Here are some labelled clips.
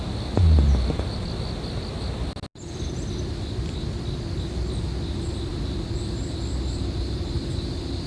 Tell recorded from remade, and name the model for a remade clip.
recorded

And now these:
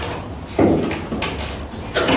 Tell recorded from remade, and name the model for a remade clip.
recorded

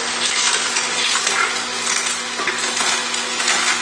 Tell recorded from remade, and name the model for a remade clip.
recorded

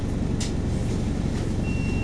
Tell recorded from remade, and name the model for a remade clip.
recorded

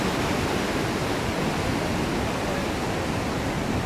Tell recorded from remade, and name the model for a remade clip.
recorded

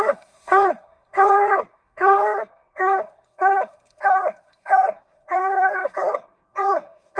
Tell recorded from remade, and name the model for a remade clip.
remade, codec, SNAC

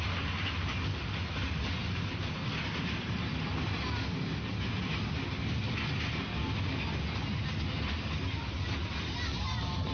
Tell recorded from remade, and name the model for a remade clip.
recorded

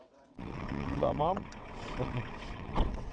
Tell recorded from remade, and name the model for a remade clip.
remade, vocoder, WaveNeXt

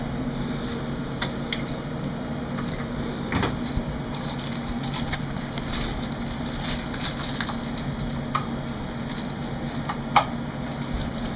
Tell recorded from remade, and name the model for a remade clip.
recorded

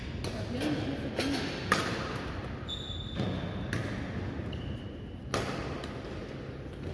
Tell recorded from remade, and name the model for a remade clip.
recorded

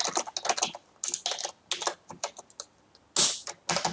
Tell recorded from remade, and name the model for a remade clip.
recorded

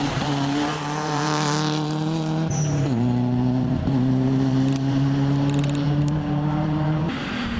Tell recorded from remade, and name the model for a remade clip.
remade, vocoder, BigVGAN v2